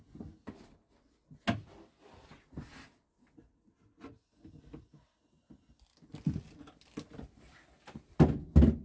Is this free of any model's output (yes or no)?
yes